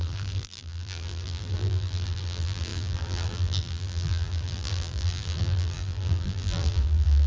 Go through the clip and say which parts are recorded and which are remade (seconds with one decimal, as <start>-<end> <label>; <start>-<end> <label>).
0.0-7.3 remade